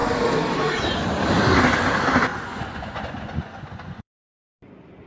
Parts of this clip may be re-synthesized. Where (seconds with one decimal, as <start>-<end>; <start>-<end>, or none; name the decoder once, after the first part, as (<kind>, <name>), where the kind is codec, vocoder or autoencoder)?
2.3-4.5 (vocoder, Vocos)